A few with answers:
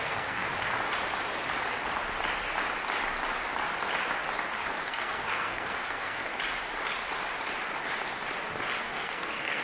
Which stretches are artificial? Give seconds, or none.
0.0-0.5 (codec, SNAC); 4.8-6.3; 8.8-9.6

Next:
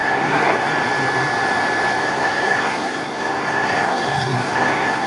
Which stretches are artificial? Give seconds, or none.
0.0-0.7 (codec, SNAC); 2.0-5.1